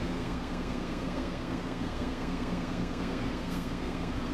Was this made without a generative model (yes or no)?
no